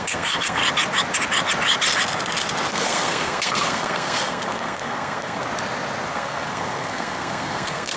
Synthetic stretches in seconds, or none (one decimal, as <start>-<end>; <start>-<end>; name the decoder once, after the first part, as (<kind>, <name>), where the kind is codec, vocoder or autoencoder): 0.0-0.6 (codec, SNAC); 2.7-5.4; 6.1-8.0